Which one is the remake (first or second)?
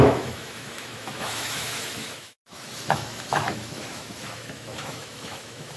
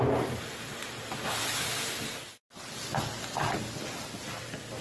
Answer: first